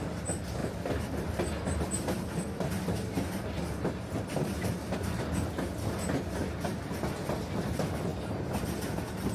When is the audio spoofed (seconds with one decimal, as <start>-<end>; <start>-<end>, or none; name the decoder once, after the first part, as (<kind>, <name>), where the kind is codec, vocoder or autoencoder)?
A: 0.6-1.3 (vocoder, BigVGAN v2)